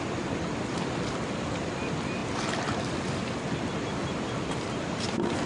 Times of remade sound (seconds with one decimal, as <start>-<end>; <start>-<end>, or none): none